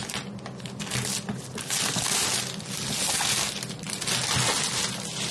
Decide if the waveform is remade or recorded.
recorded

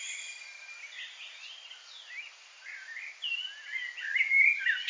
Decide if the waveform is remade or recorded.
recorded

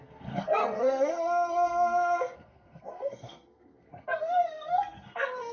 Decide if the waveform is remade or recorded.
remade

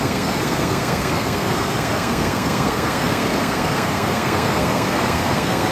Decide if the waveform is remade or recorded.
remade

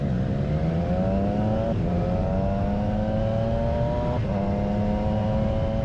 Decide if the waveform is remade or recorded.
recorded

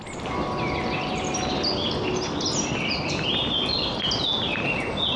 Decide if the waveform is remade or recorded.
recorded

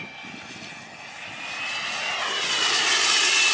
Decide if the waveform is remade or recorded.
recorded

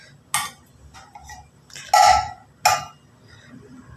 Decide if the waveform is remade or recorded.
recorded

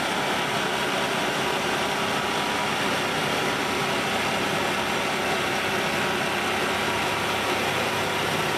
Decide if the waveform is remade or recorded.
recorded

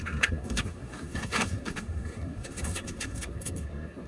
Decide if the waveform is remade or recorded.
remade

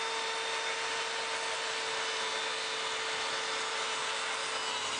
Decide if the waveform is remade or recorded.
recorded